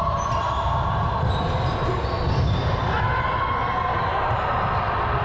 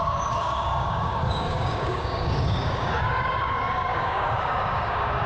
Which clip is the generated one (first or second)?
second